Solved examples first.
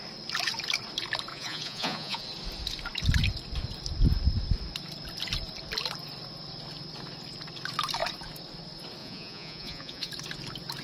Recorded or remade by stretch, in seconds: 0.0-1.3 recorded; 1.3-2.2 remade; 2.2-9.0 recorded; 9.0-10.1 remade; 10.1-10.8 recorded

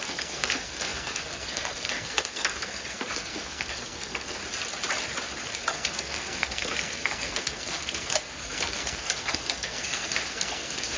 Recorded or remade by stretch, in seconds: 0.0-4.4 remade; 4.4-5.5 recorded; 5.5-11.0 remade

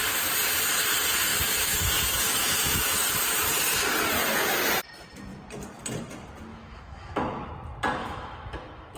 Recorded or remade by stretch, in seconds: 0.0-1.3 recorded; 1.3-3.0 remade; 3.0-6.5 recorded; 6.5-7.5 remade; 7.5-8.0 recorded; 8.0-9.0 remade

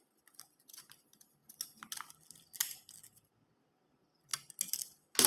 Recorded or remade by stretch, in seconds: 0.0-5.3 recorded